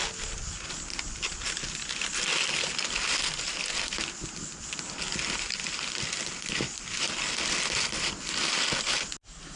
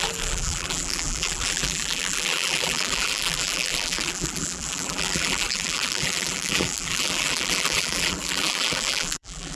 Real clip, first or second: first